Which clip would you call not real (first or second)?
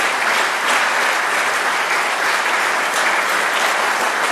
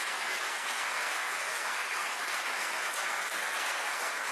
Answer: second